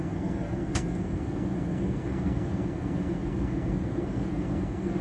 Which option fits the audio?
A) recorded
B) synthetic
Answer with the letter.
B